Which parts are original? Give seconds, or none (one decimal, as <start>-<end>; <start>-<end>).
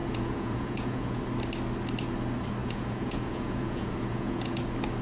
1.2-2.6; 4.6-5.0